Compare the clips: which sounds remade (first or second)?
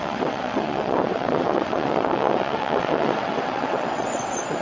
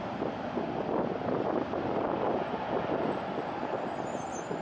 first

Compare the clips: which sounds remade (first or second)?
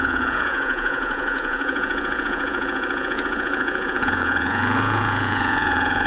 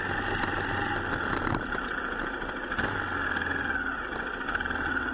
first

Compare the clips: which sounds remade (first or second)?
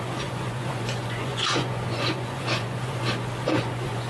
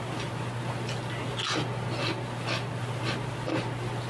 first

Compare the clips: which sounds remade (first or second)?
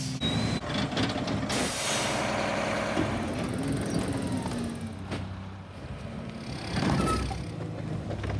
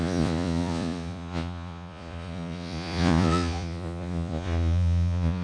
second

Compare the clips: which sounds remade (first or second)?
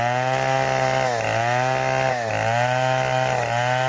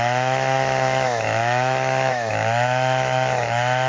second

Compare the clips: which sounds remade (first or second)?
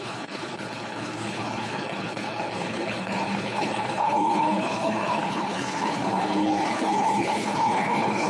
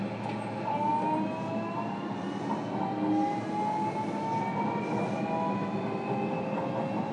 first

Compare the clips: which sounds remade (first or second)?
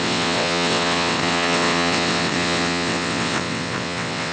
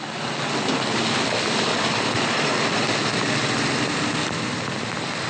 first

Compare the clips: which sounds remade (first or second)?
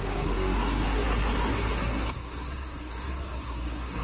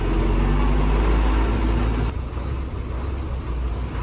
first